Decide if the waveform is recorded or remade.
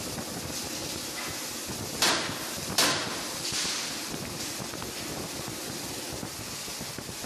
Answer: recorded